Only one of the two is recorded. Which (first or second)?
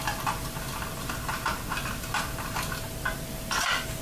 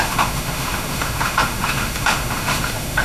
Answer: first